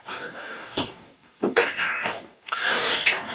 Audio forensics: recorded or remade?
remade